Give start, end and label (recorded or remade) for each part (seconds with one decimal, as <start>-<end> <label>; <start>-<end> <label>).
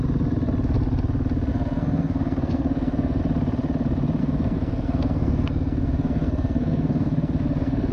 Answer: 0.0-1.5 recorded; 1.5-3.2 remade; 3.2-4.2 recorded; 4.2-7.9 remade